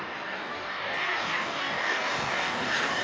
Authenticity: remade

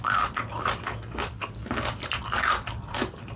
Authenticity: recorded